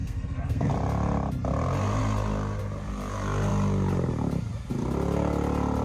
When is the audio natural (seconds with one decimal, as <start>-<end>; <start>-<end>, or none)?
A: 0.7-5.8